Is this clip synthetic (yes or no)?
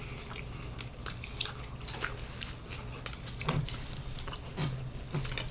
no